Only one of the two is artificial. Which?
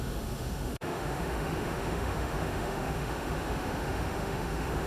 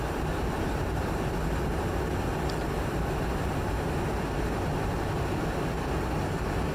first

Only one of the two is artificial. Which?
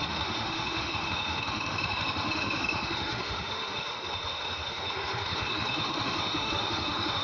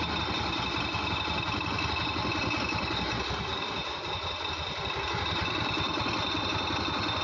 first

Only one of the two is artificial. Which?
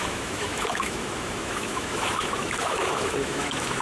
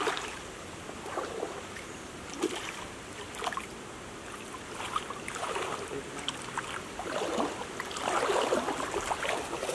first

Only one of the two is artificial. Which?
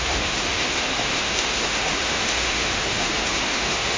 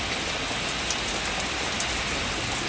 first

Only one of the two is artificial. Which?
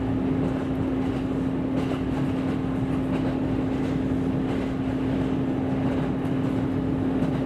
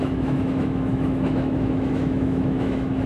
second